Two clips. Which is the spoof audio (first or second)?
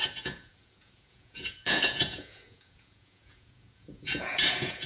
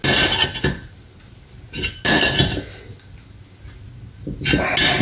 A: first